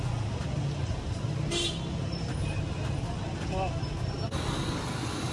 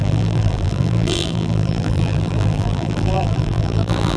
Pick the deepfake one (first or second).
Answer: second